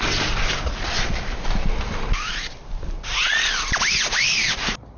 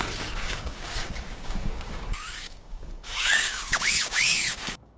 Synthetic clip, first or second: second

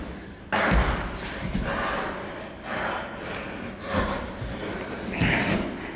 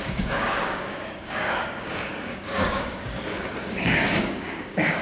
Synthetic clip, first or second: second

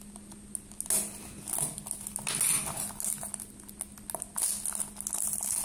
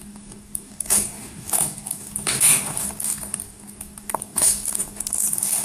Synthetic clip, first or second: second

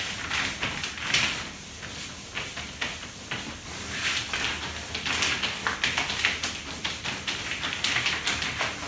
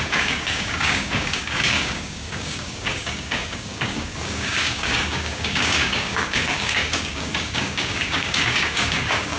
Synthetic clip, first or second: second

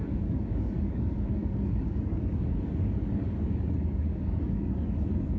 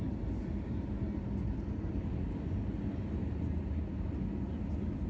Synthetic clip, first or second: first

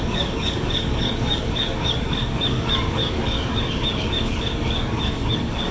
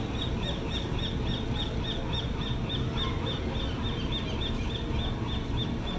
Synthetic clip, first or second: first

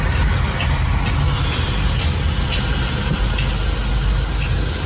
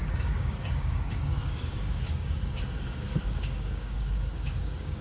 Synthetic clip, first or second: second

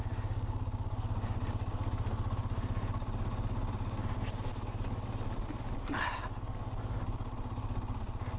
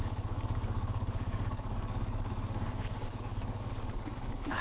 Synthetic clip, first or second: second